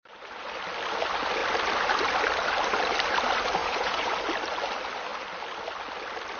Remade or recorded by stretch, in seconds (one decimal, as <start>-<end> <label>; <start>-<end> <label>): 0.0-3.6 recorded; 3.6-4.1 remade; 4.1-6.4 recorded